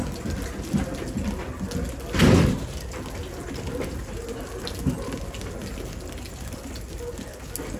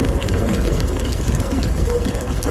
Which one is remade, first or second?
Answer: second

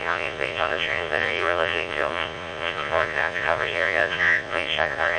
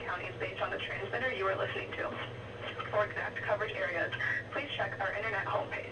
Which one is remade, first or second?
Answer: first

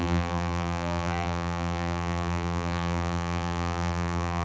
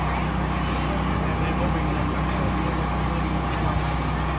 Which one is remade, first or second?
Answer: first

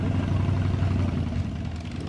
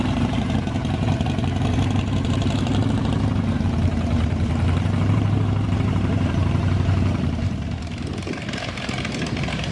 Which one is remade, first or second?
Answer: second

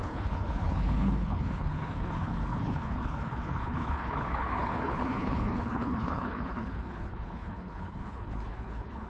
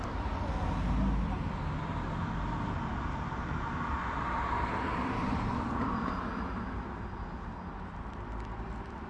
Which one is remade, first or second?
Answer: first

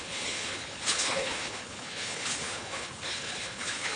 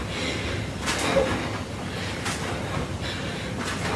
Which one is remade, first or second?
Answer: first